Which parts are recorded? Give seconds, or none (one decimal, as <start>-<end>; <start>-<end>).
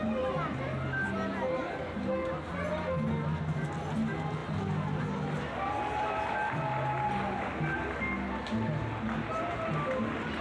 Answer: 0.0-10.4